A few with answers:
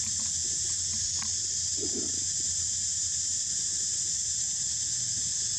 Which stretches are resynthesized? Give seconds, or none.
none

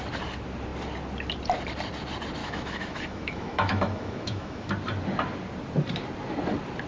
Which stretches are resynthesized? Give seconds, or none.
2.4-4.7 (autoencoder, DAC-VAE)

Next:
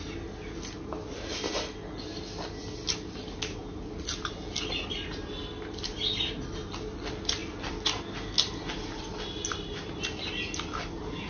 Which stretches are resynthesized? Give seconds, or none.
none